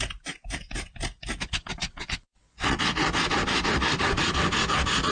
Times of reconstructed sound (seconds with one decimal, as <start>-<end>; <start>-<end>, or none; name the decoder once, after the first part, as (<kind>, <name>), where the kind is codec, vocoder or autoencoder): 1.8-2.8 (vocoder, WaveNeXt)

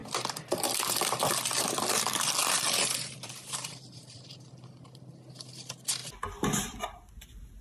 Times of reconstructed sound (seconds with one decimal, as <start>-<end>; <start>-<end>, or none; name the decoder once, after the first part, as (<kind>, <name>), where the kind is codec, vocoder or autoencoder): 0.0-4.3 (vocoder, BigVGAN v2); 6.0-6.8